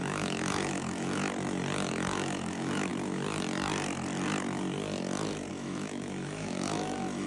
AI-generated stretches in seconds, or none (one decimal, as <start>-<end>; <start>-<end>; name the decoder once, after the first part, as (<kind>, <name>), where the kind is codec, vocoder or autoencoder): 0.0-1.2 (autoencoder, DAC-VAE); 1.9-2.9; 5.5-7.3

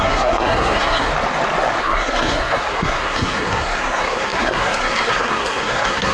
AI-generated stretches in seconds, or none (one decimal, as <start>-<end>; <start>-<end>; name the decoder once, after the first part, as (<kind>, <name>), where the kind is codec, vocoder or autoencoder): 0.0-1.1 (codec, SNAC); 1.8-6.1

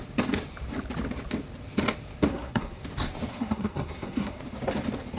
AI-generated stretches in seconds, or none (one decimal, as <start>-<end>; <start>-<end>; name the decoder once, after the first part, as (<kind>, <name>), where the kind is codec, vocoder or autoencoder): 2.3-2.8 (codec, SNAC); 3.3-4.4